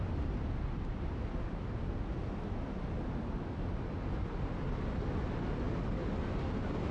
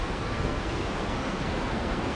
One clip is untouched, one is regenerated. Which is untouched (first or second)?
first